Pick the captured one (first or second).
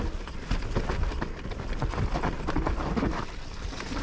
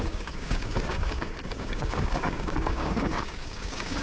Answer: first